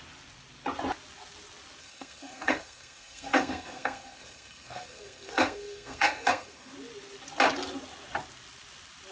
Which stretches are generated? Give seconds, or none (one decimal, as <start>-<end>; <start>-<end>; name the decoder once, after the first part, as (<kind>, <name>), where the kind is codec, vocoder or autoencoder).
1.8-6.7 (codec, SNAC)